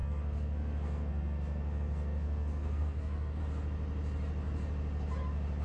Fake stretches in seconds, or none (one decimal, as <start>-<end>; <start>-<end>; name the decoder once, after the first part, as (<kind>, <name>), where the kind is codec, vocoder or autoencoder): 0.0-3.4 (codec, SNAC)